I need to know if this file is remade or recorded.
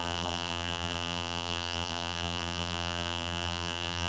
remade